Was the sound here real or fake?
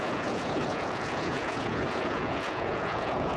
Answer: fake